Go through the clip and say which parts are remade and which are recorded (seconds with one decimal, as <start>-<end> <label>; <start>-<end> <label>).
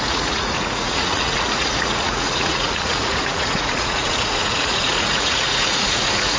0.0-6.4 remade